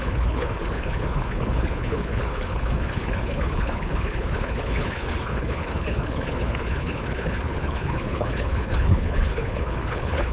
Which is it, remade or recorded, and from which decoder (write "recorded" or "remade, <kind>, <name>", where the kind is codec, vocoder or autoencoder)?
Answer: remade, codec, HILCodec